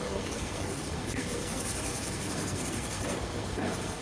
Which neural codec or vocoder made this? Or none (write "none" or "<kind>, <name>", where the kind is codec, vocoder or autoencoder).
codec, SNAC